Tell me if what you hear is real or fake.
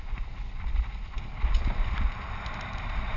fake